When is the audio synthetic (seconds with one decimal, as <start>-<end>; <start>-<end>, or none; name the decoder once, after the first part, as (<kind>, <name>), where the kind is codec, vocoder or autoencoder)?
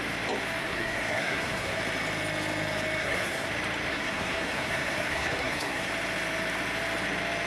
0.6-1.8 (codec, SNAC); 3.0-3.5; 3.9-5.9